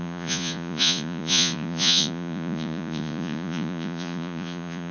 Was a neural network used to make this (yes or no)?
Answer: yes